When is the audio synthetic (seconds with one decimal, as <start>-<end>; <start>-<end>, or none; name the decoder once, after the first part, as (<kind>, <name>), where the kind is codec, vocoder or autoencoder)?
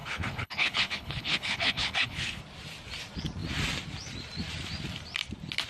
0.0-2.4 (codec, HILCodec)